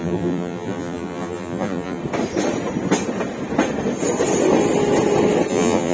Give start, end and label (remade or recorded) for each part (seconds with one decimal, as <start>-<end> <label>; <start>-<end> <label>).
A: 0.0-2.0 remade; 2.0-5.5 recorded; 5.5-5.9 remade

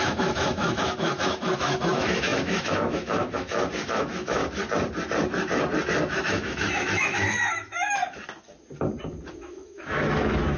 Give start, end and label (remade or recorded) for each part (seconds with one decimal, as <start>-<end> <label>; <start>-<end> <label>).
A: 0.0-4.4 remade; 4.4-6.1 recorded; 6.1-8.0 remade; 8.0-9.3 recorded; 9.3-10.6 remade

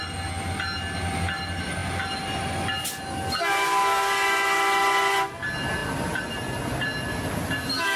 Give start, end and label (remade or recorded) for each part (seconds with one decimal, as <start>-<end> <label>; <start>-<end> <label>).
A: 0.0-8.0 recorded

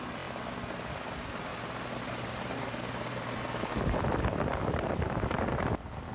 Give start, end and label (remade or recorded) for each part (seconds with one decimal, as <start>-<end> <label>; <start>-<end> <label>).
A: 0.0-1.5 recorded; 1.5-4.1 remade; 4.1-4.6 recorded; 4.6-5.5 remade; 5.5-6.1 recorded

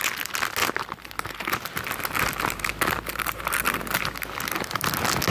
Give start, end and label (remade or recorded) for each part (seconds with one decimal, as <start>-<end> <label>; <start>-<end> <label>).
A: 0.0-5.3 recorded